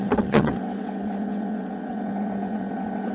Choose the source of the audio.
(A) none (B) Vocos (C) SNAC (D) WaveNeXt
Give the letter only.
D